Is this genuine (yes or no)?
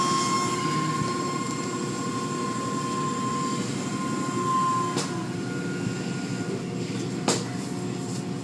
yes